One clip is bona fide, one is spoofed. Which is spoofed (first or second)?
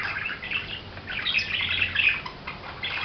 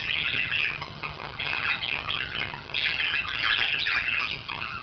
second